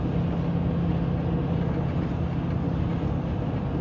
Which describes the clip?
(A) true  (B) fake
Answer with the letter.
A